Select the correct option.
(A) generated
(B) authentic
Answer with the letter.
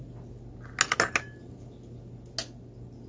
B